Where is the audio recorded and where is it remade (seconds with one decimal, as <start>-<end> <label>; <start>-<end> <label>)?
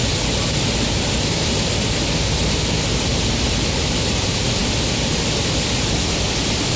0.0-6.8 recorded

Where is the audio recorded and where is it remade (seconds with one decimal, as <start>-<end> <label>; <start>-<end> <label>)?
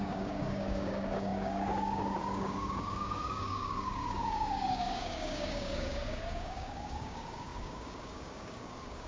0.0-9.1 remade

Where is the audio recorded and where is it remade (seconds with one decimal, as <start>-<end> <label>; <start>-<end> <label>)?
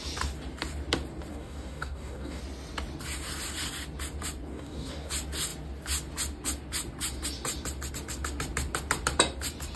0.0-1.3 recorded; 1.3-2.4 remade; 2.4-4.5 recorded; 4.5-5.1 remade; 5.1-9.8 recorded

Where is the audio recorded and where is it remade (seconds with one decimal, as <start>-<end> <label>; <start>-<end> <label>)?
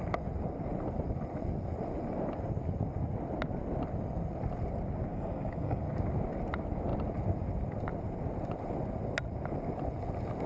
0.0-5.1 recorded; 5.1-5.8 remade; 5.8-10.5 recorded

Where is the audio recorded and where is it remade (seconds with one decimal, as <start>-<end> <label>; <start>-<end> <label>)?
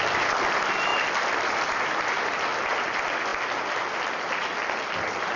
0.0-5.4 recorded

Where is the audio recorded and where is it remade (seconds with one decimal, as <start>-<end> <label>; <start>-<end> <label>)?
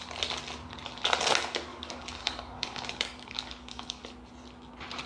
0.0-1.7 recorded; 1.7-4.0 remade; 4.0-5.1 recorded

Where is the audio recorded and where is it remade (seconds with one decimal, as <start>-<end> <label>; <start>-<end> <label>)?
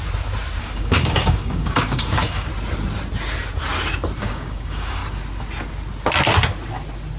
0.0-0.6 recorded; 0.6-2.5 remade; 2.5-4.2 recorded; 4.2-5.0 remade; 5.0-7.2 recorded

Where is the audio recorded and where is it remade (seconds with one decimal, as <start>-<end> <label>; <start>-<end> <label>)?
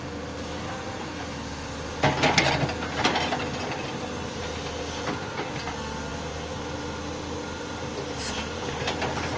0.0-9.4 recorded